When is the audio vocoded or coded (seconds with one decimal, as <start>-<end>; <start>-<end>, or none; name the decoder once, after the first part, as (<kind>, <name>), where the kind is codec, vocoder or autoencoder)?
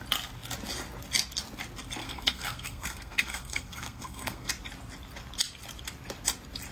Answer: 2.0-4.5 (codec, SNAC)